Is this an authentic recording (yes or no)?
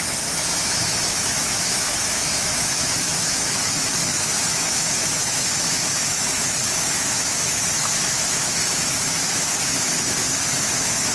no